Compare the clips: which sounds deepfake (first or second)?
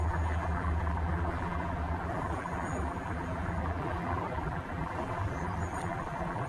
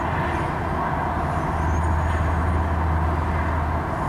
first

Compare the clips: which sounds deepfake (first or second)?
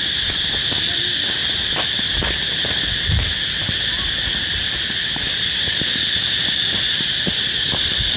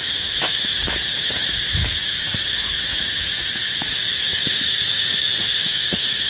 second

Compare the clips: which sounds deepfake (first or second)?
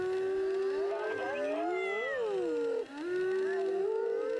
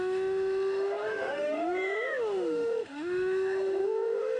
second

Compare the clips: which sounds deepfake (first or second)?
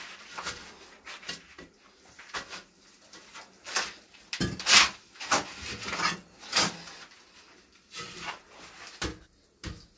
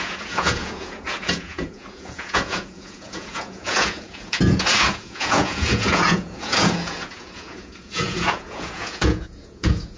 second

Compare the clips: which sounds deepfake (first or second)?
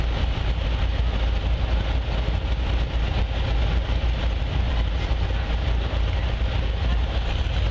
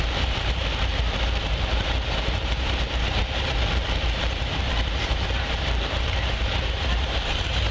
second